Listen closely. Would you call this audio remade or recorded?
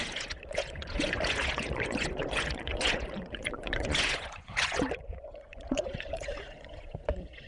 remade